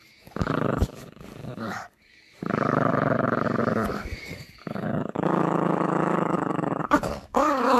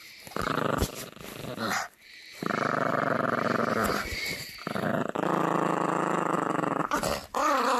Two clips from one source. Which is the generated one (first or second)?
first